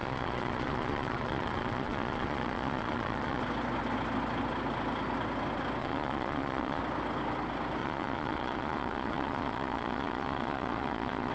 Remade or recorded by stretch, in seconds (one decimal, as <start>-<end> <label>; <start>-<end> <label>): 0.0-3.4 remade; 3.4-5.8 recorded; 5.8-6.8 remade; 6.8-7.8 recorded; 7.8-11.3 remade